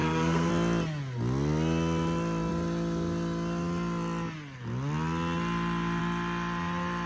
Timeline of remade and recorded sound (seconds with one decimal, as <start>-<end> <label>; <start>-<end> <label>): 0.0-0.5 remade; 0.5-7.1 recorded